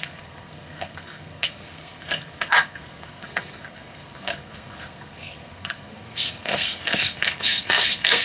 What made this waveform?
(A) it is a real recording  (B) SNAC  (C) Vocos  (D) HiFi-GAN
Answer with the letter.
B